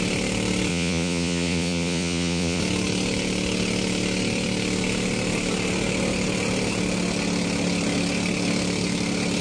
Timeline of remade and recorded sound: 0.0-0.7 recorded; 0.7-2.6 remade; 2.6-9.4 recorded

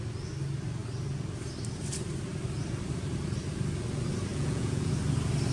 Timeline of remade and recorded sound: 0.0-4.3 recorded; 4.3-4.9 remade; 4.9-5.5 recorded

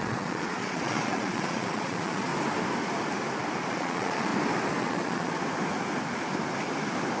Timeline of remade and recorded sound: 0.0-2.3 remade; 2.3-3.7 recorded; 3.7-4.3 remade; 4.3-4.8 recorded; 4.8-5.4 remade; 5.4-7.2 recorded